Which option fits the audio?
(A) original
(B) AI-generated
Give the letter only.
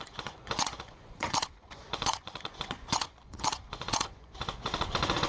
B